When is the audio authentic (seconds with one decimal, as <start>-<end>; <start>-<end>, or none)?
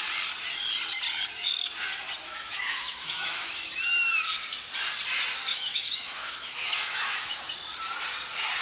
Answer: 0.0-2.3; 3.7-5.5; 7.5-8.6